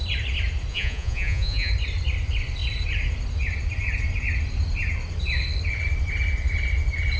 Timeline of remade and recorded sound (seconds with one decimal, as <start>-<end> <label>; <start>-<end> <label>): 0.0-0.7 recorded; 0.7-1.7 remade; 1.7-7.2 recorded

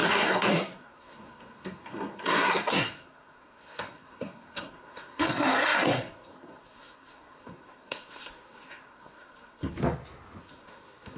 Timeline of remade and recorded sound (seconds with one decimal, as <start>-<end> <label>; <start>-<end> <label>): 0.0-9.8 remade; 9.8-10.4 recorded; 10.4-11.2 remade

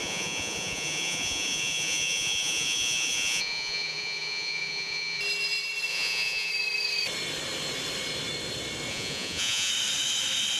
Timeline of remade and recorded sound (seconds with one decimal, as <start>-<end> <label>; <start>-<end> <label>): 0.0-5.2 remade; 5.2-5.9 recorded; 5.9-6.5 remade; 6.5-8.9 recorded; 8.9-9.7 remade; 9.7-10.6 recorded